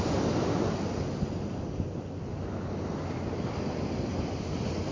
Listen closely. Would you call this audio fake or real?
real